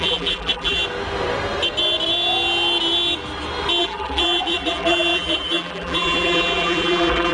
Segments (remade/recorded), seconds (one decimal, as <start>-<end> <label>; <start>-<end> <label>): 0.0-0.8 remade; 0.8-3.8 recorded; 3.8-7.3 remade